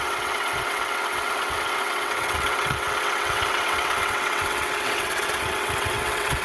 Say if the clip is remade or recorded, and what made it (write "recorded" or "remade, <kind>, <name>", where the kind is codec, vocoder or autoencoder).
remade, vocoder, WaveNeXt